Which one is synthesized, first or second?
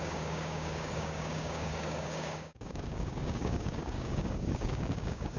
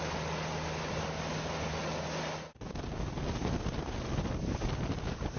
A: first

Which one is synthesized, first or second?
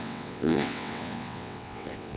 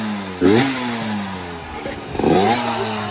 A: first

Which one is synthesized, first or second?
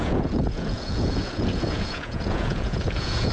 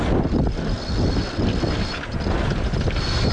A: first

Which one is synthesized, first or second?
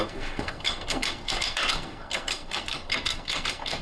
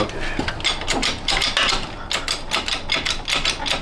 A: first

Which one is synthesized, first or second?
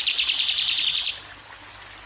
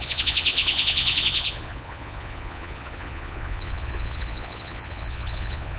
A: second